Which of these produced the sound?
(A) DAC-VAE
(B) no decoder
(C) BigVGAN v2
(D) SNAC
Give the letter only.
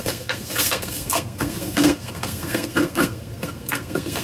D